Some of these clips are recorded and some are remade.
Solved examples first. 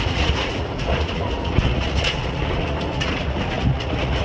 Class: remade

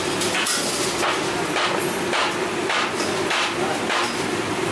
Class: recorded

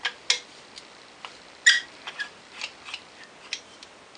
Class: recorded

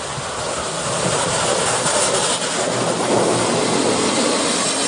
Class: recorded